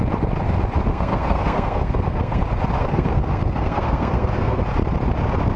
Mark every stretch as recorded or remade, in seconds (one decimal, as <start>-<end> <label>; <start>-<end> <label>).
0.0-0.9 recorded; 0.9-2.4 remade; 2.4-2.8 recorded; 2.8-4.6 remade; 4.6-5.6 recorded